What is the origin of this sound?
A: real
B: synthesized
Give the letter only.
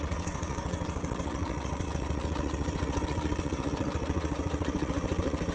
B